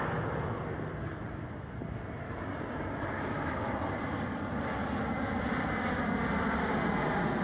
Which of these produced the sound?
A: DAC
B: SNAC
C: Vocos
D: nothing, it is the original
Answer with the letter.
D